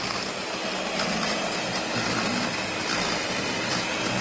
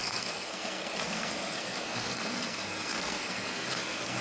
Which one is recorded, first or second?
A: first